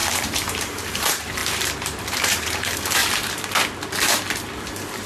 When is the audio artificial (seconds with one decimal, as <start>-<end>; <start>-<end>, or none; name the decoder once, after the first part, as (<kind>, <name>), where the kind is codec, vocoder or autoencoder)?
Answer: 0.0-3.0 (vocoder, BigVGAN v2)